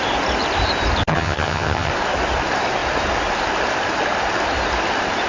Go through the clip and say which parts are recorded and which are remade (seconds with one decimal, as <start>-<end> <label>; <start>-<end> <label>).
0.0-1.1 recorded; 1.1-1.9 remade; 1.9-5.3 recorded